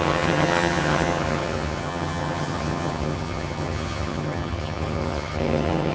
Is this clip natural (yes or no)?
no